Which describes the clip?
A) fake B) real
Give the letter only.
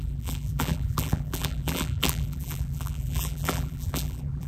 A